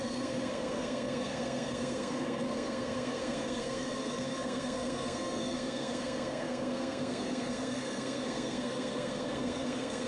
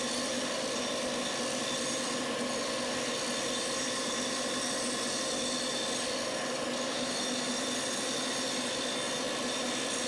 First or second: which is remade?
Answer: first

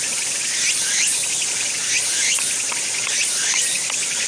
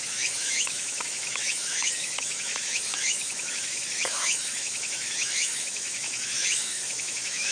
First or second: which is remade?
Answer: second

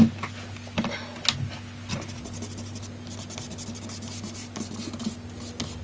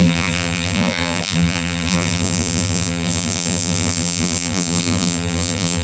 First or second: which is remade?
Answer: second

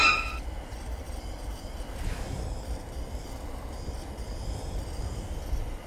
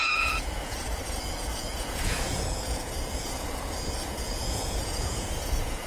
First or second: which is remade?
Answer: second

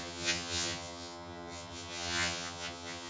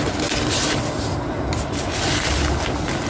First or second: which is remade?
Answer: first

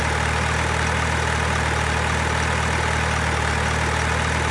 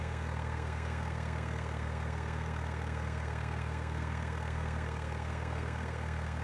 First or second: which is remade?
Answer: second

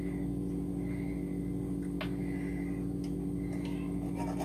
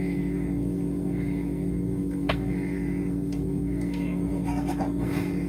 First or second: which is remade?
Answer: second